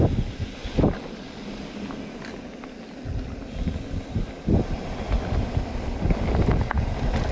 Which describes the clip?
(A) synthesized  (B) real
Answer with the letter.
B